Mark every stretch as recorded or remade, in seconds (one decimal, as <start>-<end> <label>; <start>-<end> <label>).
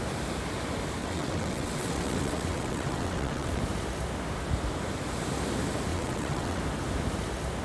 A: 0.0-1.0 recorded; 1.0-3.6 remade; 3.6-5.9 recorded; 5.9-6.6 remade; 6.6-7.6 recorded